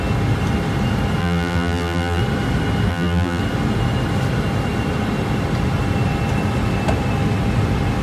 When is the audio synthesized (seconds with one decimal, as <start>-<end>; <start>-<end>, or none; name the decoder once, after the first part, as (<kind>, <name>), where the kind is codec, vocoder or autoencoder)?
1.2-2.2 (vocoder, BigVGAN v2); 2.9-3.4

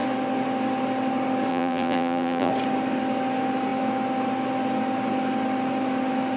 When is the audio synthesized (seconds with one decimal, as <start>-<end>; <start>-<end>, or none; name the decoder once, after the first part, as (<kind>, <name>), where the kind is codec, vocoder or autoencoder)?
1.5-2.5 (vocoder, BigVGAN v2)

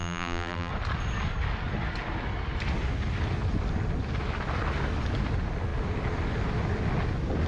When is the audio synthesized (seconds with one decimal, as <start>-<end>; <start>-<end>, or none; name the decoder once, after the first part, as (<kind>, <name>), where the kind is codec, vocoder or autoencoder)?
0.0-0.7 (vocoder, BigVGAN v2)

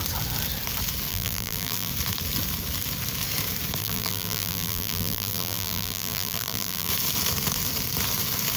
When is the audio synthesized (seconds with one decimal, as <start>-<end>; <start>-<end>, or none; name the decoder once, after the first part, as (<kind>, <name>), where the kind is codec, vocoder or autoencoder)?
1.1-1.9 (vocoder, BigVGAN v2); 3.8-6.9

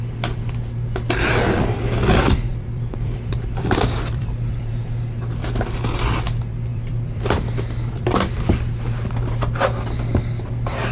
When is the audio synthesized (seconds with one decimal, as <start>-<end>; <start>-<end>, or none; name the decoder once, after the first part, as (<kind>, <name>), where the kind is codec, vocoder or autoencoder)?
2.5-4.7 (vocoder, BigVGAN v2); 6.7-8.6

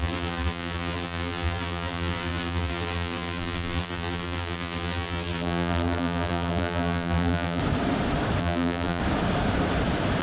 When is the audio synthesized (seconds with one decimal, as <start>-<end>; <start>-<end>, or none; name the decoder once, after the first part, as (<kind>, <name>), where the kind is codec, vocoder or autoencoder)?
0.0-7.6 (vocoder, BigVGAN v2); 8.4-9.0

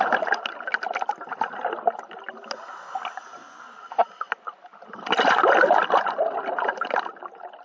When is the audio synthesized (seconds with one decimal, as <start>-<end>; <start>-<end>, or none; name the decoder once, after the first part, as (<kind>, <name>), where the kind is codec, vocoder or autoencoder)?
none